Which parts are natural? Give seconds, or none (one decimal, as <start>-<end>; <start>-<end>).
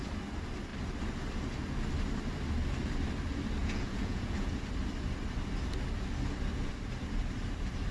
0.0-3.6; 4.5-7.9